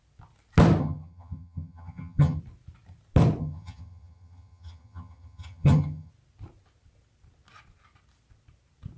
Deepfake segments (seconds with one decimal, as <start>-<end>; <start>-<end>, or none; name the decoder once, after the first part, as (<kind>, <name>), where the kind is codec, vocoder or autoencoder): 0.8-2.4 (vocoder, HiFi-GAN); 3.4-6.1